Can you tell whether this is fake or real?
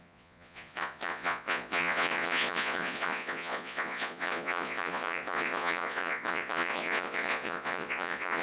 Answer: fake